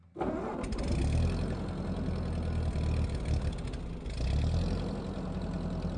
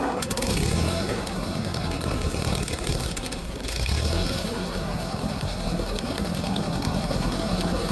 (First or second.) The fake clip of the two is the second